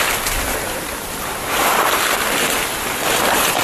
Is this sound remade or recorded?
recorded